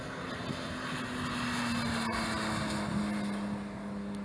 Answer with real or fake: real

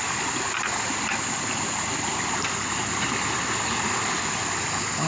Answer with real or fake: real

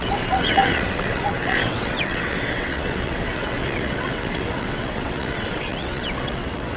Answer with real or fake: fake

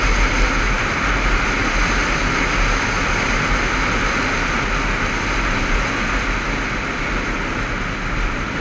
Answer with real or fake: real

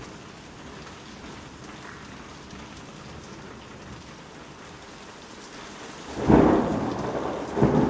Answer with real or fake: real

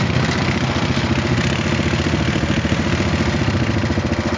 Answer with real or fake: real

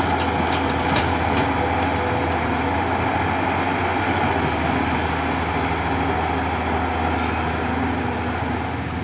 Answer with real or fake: real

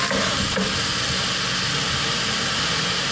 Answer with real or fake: real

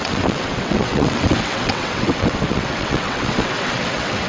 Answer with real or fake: fake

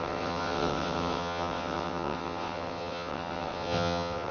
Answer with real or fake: fake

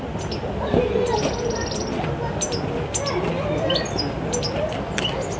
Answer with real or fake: real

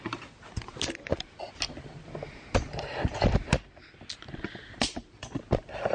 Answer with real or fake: real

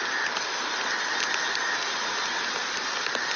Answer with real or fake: real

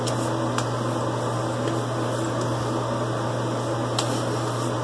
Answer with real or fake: real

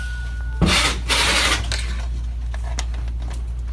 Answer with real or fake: real